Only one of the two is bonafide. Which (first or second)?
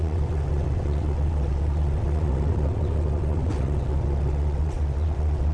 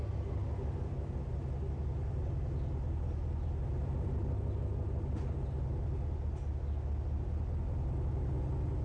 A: second